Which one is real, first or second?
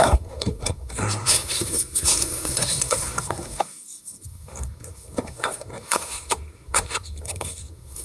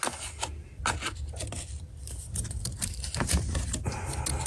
second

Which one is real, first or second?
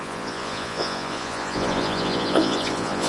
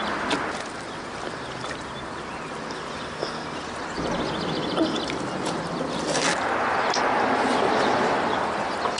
second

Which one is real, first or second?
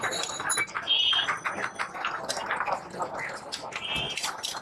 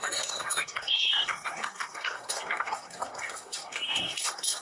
first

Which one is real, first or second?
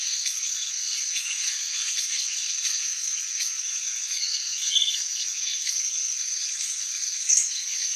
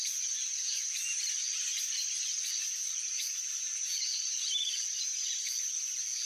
second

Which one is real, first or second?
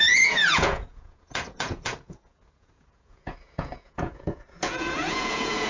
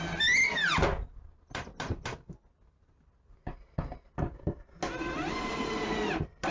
second